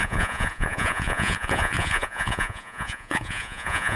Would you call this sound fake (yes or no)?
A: yes